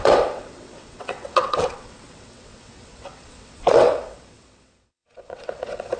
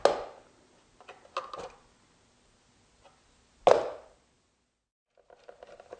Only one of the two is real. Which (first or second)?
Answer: second